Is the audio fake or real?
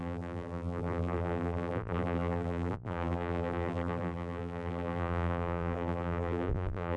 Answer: fake